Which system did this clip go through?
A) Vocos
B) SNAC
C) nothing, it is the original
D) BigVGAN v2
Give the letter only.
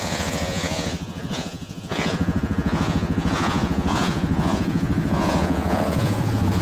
A